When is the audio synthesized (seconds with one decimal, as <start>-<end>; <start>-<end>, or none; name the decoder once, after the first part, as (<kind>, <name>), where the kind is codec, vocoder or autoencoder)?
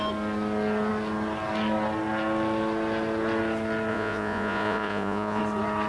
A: 3.9-5.4 (vocoder, Vocos)